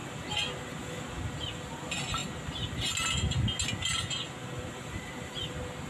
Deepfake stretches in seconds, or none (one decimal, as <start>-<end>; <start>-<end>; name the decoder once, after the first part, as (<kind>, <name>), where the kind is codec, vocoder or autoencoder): 4.4-5.5 (vocoder, BigVGAN v2)